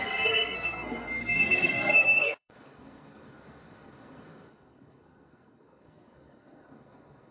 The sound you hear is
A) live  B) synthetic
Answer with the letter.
B